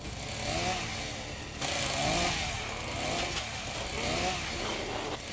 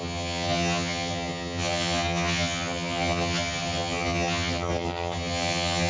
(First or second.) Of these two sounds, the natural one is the first